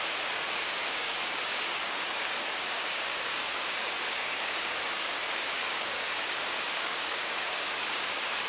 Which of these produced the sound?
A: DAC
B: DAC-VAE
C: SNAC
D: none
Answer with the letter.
A